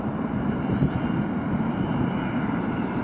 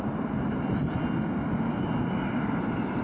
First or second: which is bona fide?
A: second